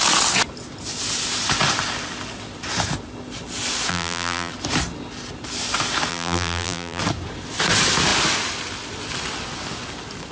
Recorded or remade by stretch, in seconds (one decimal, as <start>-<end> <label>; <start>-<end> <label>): 0.0-3.9 recorded; 3.9-4.5 remade; 4.5-6.1 recorded; 6.1-7.0 remade; 7.0-10.3 recorded